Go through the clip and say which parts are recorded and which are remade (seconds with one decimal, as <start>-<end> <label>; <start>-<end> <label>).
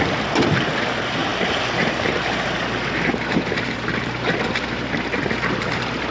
0.0-6.1 recorded